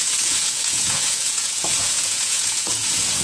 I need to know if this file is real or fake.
fake